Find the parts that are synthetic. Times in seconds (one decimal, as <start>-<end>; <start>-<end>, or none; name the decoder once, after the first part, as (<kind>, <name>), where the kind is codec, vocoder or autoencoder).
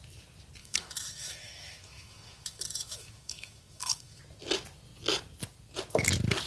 0.6-4.2 (autoencoder, DAC-VAE)